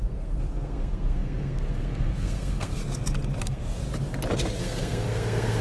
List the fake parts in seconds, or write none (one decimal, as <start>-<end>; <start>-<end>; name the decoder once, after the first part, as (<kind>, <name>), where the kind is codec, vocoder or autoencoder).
0.0-2.8 (codec, SNAC); 3.4-3.8; 4.6-5.6